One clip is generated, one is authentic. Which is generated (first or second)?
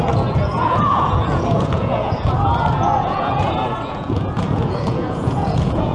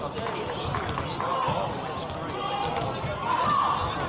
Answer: first